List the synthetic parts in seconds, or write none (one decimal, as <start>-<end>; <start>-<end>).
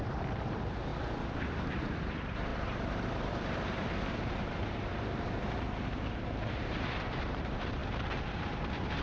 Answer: 0.0-0.9; 1.8-7.8; 8.3-9.0